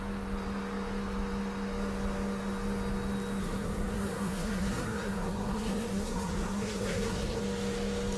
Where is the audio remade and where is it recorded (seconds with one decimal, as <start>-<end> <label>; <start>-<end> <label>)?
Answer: 0.0-3.4 recorded; 3.4-7.4 remade; 7.4-8.2 recorded